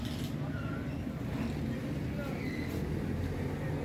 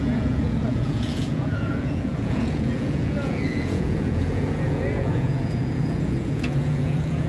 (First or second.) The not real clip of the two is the second